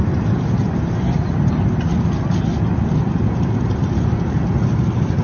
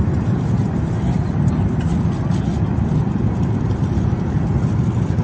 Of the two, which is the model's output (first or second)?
second